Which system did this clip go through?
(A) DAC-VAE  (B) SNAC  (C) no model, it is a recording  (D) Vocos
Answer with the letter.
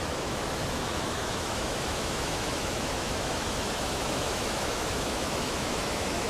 A